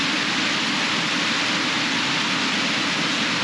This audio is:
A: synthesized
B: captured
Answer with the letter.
B